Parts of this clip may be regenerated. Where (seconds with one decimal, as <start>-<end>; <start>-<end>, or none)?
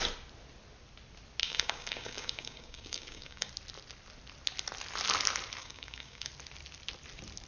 1.4-3.5; 5.6-6.3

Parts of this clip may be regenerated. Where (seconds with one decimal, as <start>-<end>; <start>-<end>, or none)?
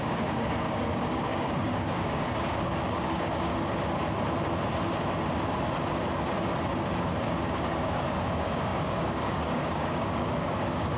0.0-3.5; 7.6-11.0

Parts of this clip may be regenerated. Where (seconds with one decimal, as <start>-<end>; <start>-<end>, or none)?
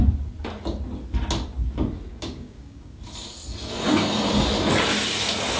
2.1-3.0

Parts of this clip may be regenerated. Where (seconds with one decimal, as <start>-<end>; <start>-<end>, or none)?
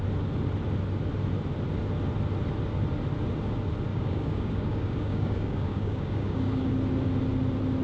3.9-6.7